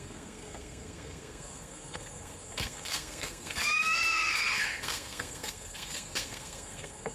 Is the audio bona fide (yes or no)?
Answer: no